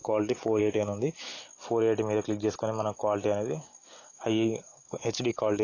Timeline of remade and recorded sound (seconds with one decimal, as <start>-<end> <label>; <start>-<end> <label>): 0.0-1.3 remade; 1.3-3.5 recorded; 3.5-5.6 remade

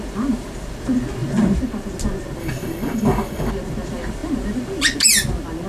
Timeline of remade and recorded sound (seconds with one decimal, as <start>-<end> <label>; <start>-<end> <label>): 0.0-2.4 recorded; 2.4-3.5 remade; 3.5-5.7 recorded

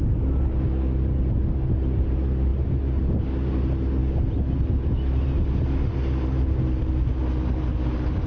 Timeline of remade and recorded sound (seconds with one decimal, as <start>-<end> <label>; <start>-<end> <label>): 0.0-8.3 recorded